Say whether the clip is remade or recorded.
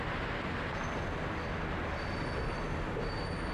recorded